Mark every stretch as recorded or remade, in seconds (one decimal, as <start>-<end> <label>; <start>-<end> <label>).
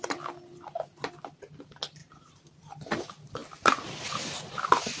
0.0-2.0 recorded; 2.0-2.9 remade; 2.9-5.0 recorded